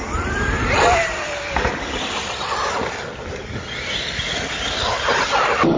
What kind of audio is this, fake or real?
real